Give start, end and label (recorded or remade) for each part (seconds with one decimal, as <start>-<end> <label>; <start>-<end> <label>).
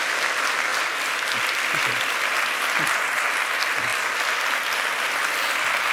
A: 0.0-5.9 recorded